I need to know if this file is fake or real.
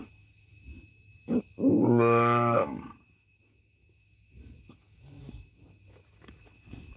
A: fake